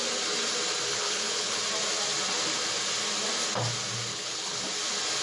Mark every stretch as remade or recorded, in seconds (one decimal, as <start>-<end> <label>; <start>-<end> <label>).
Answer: 0.0-0.9 recorded; 0.9-1.6 remade; 1.6-4.1 recorded; 4.1-4.6 remade; 4.6-5.2 recorded